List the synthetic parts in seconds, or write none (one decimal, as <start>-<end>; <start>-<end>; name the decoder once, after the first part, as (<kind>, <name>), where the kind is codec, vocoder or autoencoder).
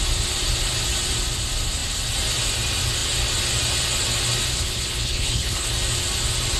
4.5-5.7 (codec, HILCodec)